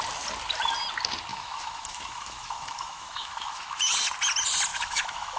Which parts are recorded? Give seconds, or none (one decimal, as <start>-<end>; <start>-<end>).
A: 0.0-1.3; 3.8-4.7

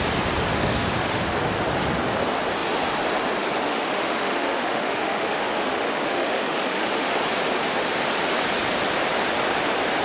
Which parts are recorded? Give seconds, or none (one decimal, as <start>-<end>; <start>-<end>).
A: 0.0-0.5; 1.2-3.7; 7.2-10.0